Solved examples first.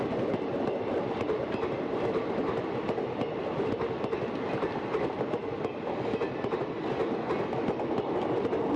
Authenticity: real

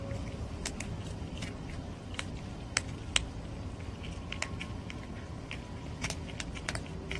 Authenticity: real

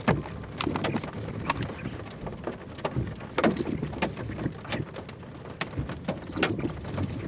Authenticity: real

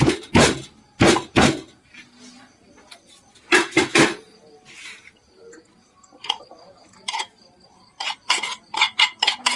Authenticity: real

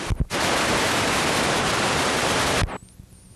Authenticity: real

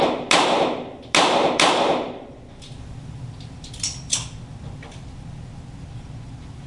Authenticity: real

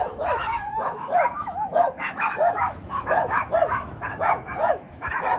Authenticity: fake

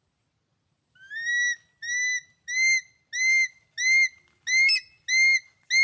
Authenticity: real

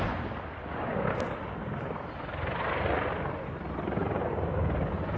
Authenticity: real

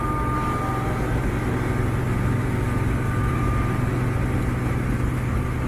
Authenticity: real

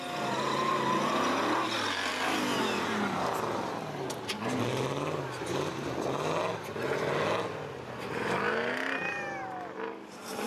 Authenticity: real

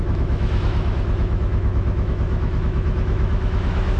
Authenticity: fake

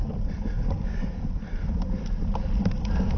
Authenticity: real